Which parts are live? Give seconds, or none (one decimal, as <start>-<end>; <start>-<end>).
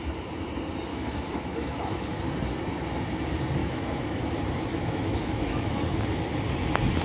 0.0-0.9; 2.2-3.6; 4.2-4.7; 5.8-7.0